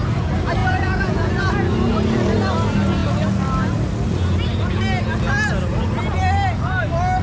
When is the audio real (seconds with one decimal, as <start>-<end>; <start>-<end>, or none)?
0.0-0.6; 1.3-7.2